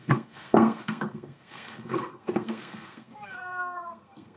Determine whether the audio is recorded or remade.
remade